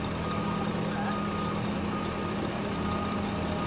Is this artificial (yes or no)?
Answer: no